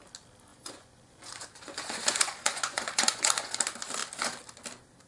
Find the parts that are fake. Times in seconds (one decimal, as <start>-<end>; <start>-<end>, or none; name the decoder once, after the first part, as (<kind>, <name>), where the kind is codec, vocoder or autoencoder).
0.5-3.6 (vocoder, Vocos)